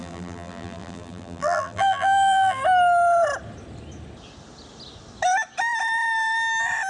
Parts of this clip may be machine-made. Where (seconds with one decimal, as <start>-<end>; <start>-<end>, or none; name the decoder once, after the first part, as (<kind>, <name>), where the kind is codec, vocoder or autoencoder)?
0.0-2.6 (vocoder, BigVGAN v2)